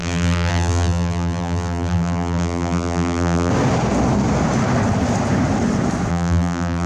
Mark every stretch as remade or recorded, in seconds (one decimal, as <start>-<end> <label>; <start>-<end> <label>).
0.0-3.5 remade; 3.5-6.1 recorded; 6.1-6.9 remade